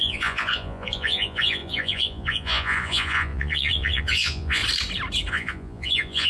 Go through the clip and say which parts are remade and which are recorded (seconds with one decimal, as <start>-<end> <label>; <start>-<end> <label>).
0.0-4.6 remade; 4.6-5.3 recorded; 5.3-6.3 remade

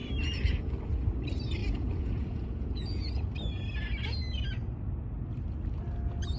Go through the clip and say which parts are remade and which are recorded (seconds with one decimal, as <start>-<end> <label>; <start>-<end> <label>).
0.0-1.6 recorded; 1.6-3.2 remade; 3.2-6.4 recorded

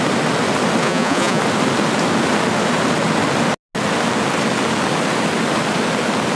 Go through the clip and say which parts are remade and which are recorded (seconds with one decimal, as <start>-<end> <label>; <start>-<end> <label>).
0.0-0.8 recorded; 0.8-1.4 remade; 1.4-6.4 recorded

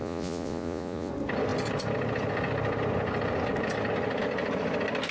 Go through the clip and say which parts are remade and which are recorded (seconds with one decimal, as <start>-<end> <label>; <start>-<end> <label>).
0.0-1.1 remade; 1.1-5.1 recorded

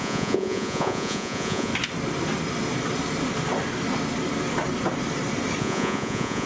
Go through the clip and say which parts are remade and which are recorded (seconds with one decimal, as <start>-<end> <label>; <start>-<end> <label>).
0.0-1.7 remade; 1.7-5.6 recorded; 5.6-6.5 remade

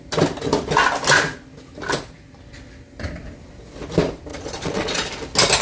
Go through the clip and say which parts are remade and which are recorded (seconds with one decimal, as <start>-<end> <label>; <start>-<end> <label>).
0.0-4.3 recorded; 4.3-5.1 remade; 5.1-5.6 recorded

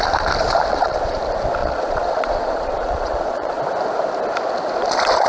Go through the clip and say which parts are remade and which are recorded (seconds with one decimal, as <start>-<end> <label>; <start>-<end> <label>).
0.0-0.7 recorded; 0.7-1.2 remade; 1.2-1.6 recorded; 1.6-3.6 remade; 3.6-5.3 recorded

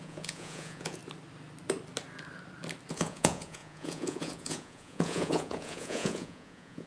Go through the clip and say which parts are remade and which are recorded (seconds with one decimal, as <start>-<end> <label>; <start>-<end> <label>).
0.0-1.0 remade; 1.0-2.9 recorded; 2.9-6.9 remade